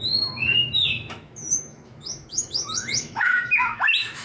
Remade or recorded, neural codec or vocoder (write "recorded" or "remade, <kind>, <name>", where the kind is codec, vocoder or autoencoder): remade, autoencoder, DAC-VAE